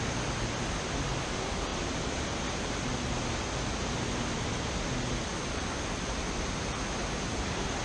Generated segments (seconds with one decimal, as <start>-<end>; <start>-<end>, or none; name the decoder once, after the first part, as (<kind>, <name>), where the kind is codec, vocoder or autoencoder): none